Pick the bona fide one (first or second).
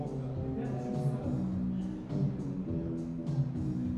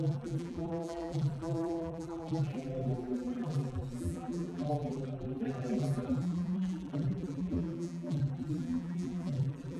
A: first